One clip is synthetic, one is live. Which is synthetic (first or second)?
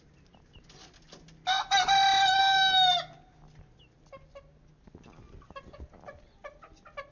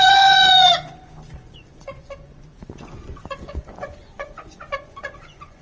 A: second